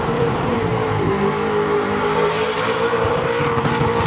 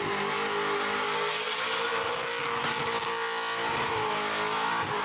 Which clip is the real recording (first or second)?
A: second